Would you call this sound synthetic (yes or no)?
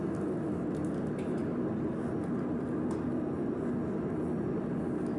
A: no